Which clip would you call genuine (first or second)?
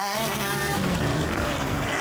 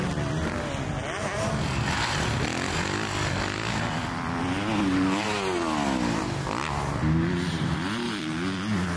second